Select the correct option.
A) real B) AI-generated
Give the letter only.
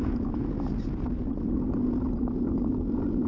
A